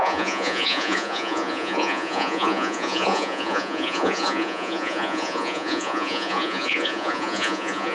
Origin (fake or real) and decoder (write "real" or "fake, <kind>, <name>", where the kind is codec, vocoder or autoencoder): fake, vocoder, Vocos